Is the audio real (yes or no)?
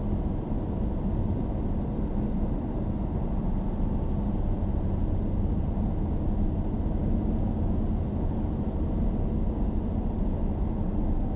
yes